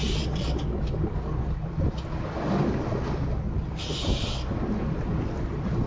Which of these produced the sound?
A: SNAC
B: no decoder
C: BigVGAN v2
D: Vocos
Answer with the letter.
B